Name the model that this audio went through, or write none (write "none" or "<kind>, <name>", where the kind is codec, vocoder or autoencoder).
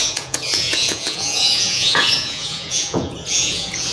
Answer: vocoder, Vocos